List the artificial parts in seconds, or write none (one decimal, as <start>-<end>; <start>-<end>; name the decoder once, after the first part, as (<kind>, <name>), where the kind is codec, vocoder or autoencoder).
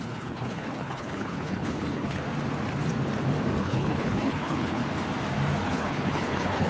0.0-2.2 (codec, HILCodec); 3.6-4.8; 5.6-6.7